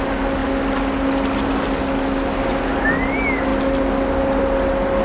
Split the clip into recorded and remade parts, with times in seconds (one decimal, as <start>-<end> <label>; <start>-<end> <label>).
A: 0.0-5.0 recorded